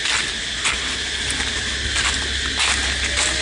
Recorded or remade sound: recorded